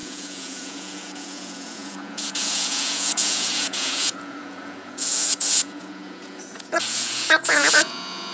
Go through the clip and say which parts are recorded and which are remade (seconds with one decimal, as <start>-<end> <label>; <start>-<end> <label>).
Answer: 0.0-8.3 remade